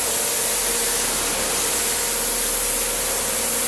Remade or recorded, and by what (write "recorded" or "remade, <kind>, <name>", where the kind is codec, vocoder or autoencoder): recorded